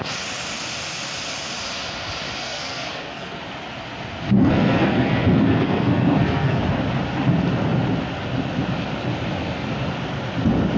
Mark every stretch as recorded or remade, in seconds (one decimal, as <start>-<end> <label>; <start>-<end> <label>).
0.0-2.4 recorded; 2.4-3.3 remade; 3.3-4.4 recorded; 4.4-6.6 remade; 6.6-10.8 recorded